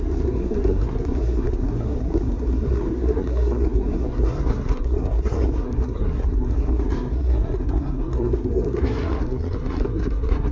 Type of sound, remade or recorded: remade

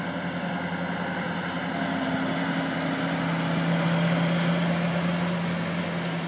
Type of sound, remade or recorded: recorded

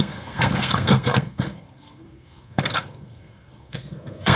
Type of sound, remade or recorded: remade